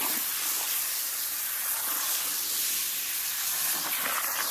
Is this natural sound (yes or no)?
yes